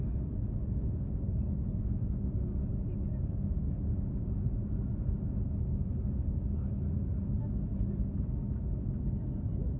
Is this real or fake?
real